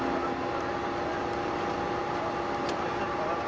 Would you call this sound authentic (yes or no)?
yes